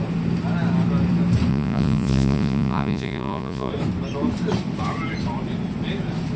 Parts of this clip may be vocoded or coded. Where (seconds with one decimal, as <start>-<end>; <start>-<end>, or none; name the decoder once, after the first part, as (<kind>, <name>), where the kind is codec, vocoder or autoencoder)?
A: 1.5-3.7 (vocoder, Vocos)